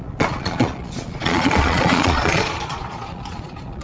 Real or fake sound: fake